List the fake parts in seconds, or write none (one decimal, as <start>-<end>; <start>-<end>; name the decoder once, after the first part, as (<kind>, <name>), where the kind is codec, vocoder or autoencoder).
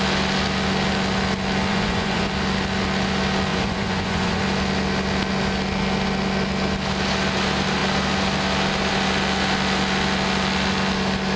1.7-2.3 (vocoder, Vocos); 3.5-4.4